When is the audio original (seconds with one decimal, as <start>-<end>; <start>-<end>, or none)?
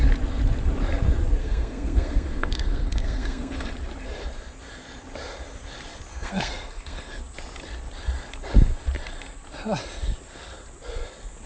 0.0-1.4; 3.7-6.1; 7.1-11.5